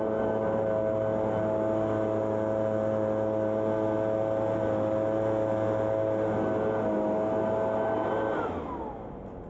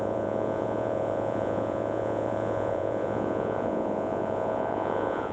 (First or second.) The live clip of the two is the first